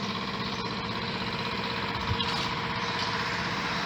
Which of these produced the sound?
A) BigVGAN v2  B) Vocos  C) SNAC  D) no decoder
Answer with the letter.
D